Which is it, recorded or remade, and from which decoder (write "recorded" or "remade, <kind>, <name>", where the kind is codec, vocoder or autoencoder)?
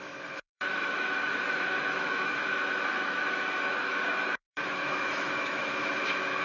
remade, autoencoder, DAC-VAE